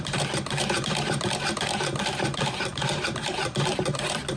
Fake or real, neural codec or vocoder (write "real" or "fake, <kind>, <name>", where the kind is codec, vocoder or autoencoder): fake, vocoder, BigVGAN v2